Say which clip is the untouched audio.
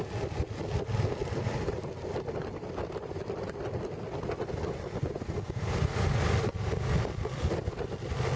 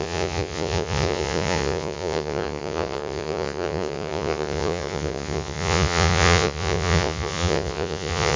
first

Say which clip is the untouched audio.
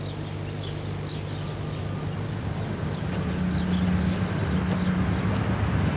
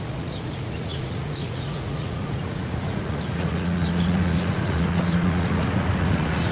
first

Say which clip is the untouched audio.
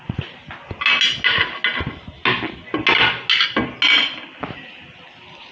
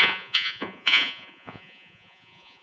first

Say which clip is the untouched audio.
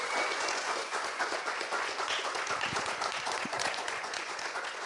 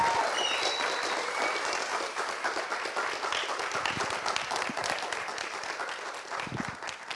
second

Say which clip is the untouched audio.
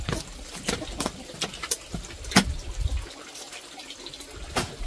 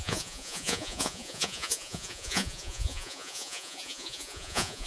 first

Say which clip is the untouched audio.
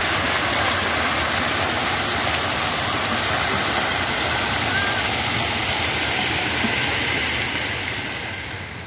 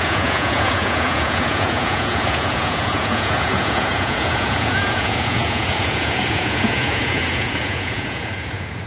first